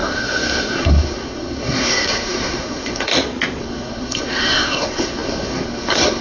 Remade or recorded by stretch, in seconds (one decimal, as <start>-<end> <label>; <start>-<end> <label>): 0.0-3.1 remade; 3.1-3.6 recorded; 3.6-6.2 remade